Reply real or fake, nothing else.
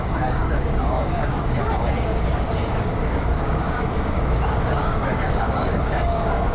fake